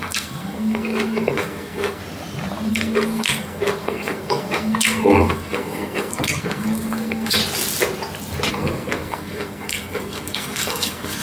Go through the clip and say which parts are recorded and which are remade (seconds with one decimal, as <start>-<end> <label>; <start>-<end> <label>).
0.0-2.0 remade; 2.0-2.7 recorded; 2.7-7.4 remade; 7.4-8.5 recorded; 8.5-11.2 remade